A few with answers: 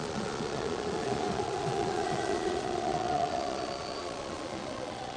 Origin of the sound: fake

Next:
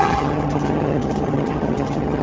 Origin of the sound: fake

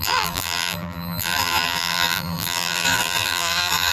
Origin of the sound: fake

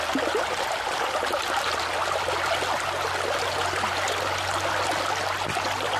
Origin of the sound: real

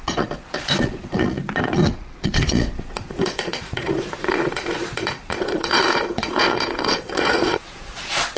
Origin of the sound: fake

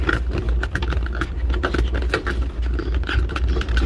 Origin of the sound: real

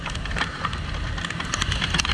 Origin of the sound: fake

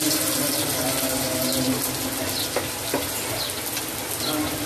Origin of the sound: real